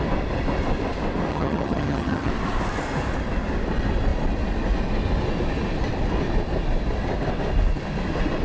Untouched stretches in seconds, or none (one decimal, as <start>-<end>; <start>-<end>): 0.0-1.3; 2.3-8.4